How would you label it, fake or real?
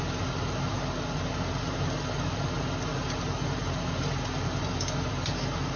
real